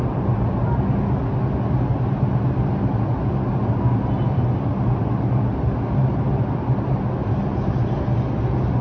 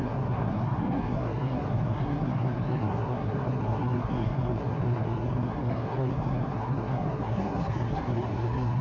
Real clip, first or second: first